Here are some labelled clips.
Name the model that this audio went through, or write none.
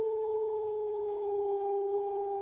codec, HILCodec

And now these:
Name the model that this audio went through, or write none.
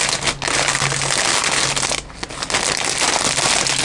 none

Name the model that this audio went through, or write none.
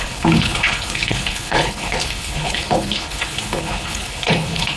codec, HILCodec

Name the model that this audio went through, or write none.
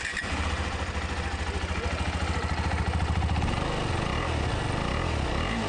none